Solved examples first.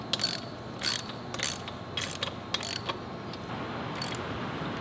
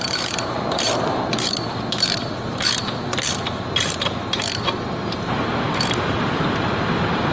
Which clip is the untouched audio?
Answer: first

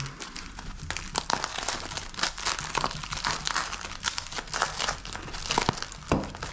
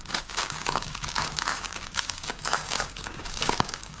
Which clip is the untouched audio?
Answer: first